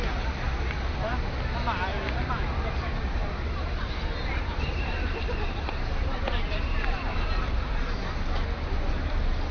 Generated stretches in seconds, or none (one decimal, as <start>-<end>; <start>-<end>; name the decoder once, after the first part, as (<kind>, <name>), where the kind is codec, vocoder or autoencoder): 3.2-8.0 (vocoder, BigVGAN v2)